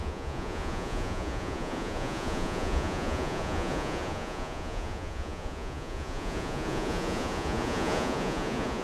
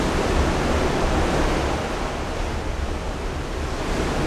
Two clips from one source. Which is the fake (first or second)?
first